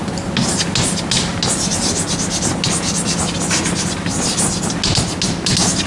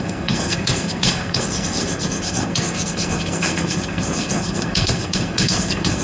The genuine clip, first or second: first